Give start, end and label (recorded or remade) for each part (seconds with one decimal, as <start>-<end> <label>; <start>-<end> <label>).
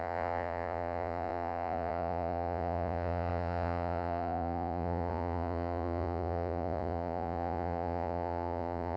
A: 0.0-9.0 remade